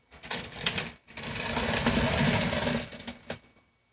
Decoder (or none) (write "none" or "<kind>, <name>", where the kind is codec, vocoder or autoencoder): none